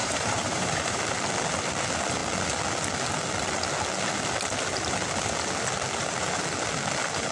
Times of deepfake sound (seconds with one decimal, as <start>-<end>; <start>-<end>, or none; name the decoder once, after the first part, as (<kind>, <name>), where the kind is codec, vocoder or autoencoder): 0.0-1.0 (vocoder, BigVGAN v2)